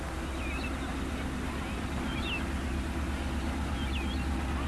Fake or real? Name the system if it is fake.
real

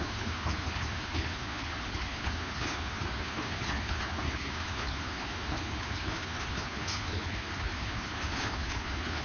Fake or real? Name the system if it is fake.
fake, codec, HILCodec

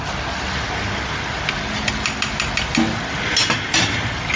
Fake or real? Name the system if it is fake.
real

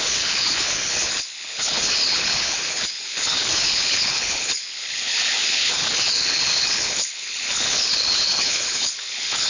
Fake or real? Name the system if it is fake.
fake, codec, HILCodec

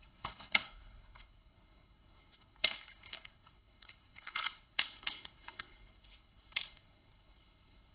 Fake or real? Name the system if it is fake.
fake, codec, HILCodec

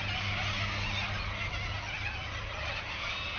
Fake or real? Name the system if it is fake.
real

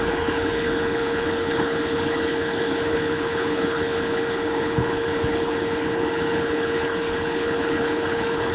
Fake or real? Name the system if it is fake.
fake, codec, HILCodec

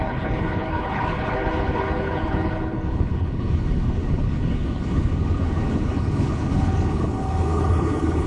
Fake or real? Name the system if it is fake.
fake, codec, HILCodec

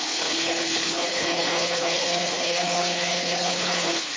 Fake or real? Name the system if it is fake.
fake, codec, HILCodec